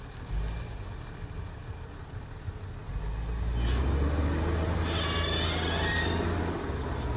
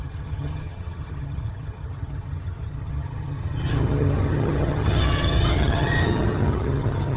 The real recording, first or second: first